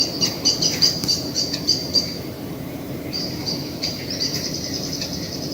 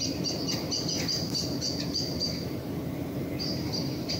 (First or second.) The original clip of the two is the second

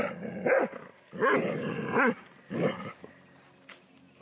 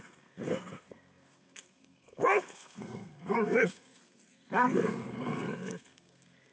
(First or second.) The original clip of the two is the first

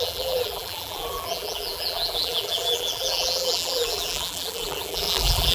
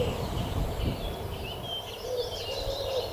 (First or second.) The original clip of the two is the second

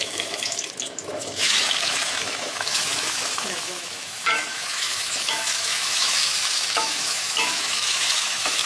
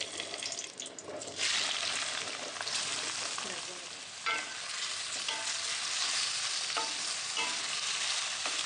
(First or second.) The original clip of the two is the second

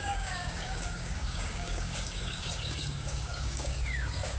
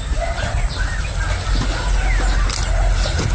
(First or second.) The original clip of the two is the second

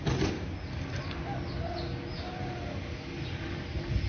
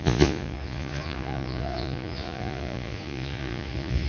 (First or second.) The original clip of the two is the first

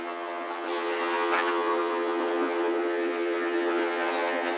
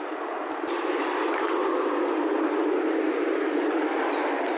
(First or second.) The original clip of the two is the second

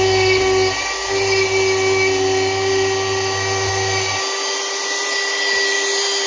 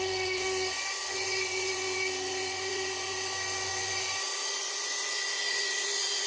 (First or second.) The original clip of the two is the first